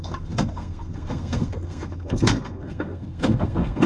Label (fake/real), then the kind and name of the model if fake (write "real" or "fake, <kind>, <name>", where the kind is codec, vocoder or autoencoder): fake, codec, SNAC